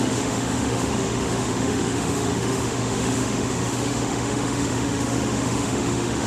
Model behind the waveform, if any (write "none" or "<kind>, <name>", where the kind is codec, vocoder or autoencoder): autoencoder, DAC-VAE